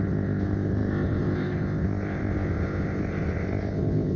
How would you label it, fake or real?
fake